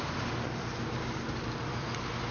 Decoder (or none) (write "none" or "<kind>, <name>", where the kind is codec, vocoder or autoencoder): none